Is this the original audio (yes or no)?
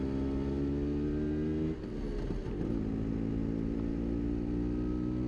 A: yes